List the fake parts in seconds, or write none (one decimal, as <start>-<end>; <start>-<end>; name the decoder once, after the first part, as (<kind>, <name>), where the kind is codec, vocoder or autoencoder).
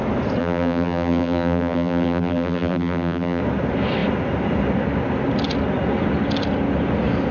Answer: 0.4-3.4 (vocoder, BigVGAN v2)